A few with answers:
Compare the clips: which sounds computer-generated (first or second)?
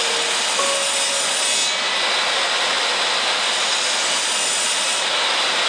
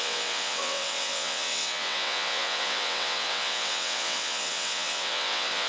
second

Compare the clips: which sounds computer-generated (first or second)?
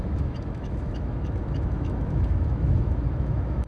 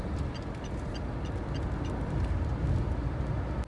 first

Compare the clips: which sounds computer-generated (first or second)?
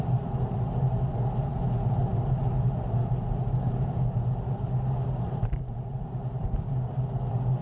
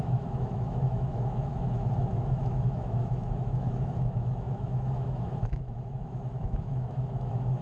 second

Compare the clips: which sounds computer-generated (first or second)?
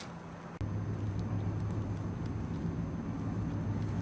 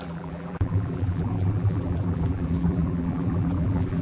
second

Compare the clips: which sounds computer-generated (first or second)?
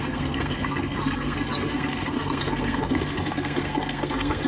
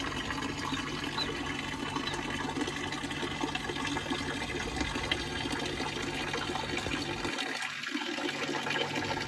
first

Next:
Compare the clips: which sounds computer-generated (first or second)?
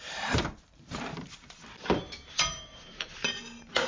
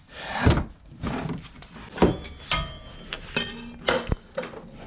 first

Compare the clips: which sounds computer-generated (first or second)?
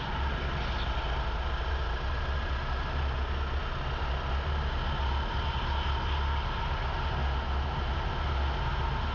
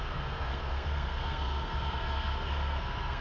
second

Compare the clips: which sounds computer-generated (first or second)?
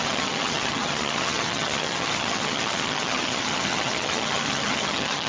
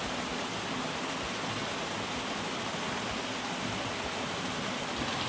first